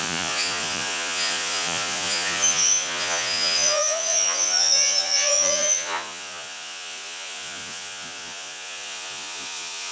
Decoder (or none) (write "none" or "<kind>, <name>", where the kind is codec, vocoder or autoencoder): vocoder, Vocos